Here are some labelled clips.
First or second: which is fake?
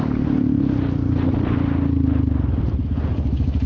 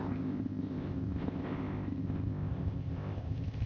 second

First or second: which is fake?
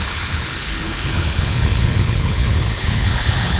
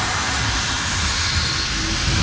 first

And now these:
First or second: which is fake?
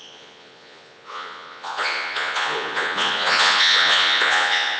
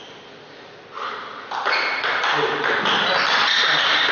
first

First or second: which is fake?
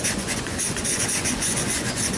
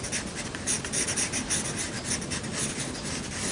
first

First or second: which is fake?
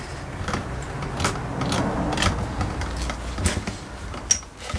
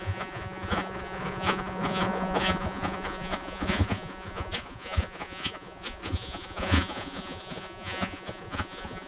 second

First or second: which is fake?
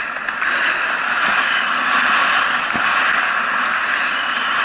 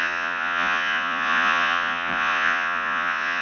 second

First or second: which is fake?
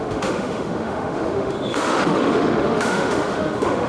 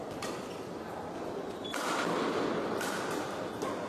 first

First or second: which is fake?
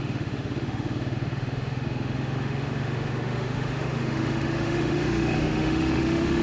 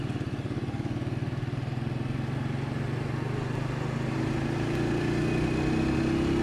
first